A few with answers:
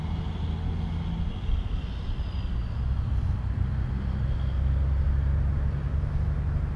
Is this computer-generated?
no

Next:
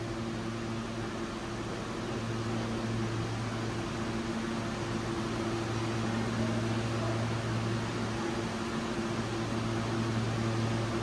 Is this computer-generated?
no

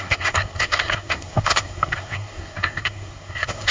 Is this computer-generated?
yes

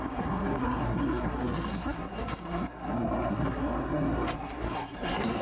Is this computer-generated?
yes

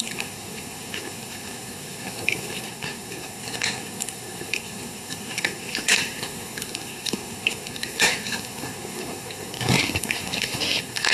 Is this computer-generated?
yes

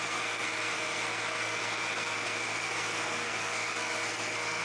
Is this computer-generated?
yes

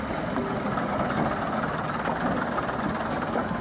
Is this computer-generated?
no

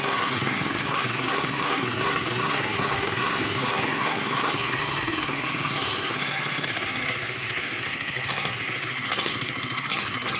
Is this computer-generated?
yes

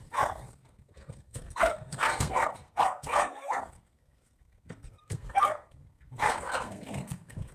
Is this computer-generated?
yes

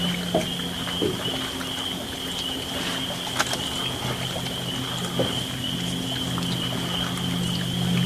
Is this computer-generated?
no